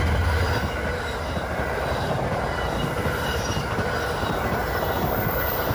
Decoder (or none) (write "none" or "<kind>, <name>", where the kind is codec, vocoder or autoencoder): none